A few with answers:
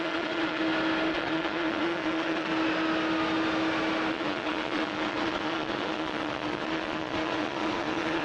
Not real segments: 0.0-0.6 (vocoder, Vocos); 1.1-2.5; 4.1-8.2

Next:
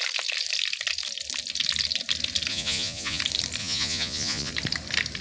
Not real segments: 2.5-3.2 (vocoder, Vocos); 3.6-4.5

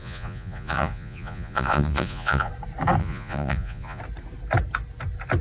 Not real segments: 0.0-2.5 (vocoder, Vocos); 3.0-4.0